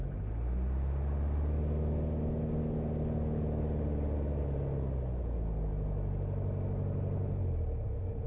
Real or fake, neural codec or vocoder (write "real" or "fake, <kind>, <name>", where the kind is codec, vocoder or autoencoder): real